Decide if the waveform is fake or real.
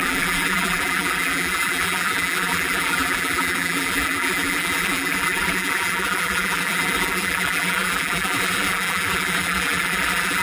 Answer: fake